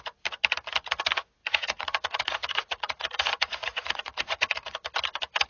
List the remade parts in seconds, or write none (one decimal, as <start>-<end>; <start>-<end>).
1.4-4.7